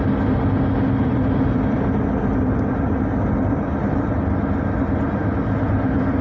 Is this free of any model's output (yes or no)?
yes